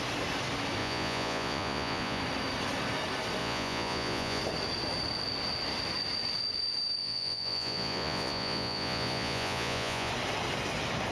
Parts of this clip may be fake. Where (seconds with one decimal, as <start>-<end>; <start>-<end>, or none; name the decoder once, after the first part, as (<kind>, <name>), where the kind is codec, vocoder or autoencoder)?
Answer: 0.8-2.2 (vocoder, Vocos); 3.4-4.4; 7.0-10.1